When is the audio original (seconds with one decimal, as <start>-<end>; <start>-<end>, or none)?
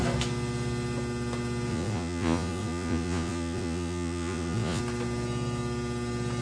0.0-1.7; 4.8-6.4